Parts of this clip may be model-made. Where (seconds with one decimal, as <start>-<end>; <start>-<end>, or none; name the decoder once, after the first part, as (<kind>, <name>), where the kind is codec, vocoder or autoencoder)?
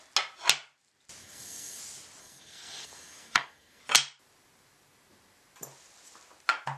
1.2-1.8 (codec, SNAC); 2.2-3.8